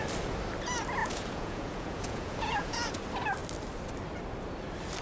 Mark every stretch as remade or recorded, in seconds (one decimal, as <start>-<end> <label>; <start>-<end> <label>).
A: 0.0-1.0 recorded; 1.0-2.9 remade; 2.9-5.0 recorded